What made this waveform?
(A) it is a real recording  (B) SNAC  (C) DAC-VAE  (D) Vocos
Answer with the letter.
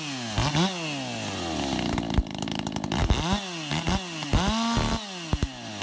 A